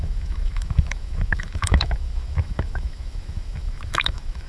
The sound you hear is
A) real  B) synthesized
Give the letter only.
B